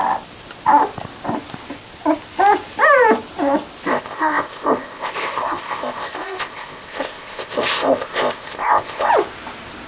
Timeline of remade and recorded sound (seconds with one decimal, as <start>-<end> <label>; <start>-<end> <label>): 0.0-3.9 recorded; 3.9-9.1 remade; 9.1-9.9 recorded